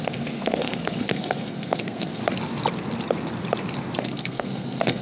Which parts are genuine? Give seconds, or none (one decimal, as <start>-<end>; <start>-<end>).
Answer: 2.2-4.0